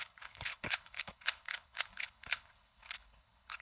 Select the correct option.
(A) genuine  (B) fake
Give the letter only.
B